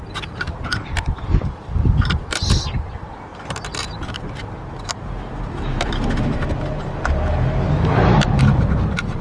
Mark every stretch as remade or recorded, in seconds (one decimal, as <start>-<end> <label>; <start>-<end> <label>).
0.0-9.2 remade